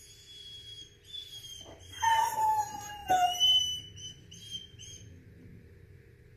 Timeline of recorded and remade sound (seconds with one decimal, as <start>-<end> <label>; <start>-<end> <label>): 0.0-2.0 recorded; 2.0-3.0 remade; 3.0-5.3 recorded; 5.3-6.4 remade